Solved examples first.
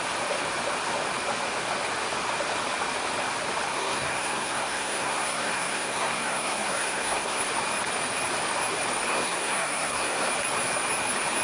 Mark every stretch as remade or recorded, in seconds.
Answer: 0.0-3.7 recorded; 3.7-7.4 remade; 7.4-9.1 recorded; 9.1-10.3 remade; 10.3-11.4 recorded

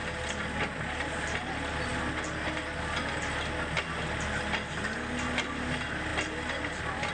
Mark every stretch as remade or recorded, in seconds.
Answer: 0.0-7.1 recorded

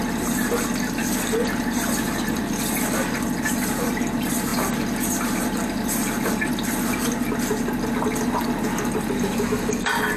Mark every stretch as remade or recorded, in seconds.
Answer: 0.0-10.2 recorded

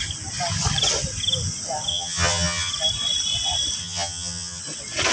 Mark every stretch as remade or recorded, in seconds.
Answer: 0.0-1.9 recorded; 1.9-2.7 remade; 2.7-3.8 recorded; 3.8-4.6 remade; 4.6-5.1 recorded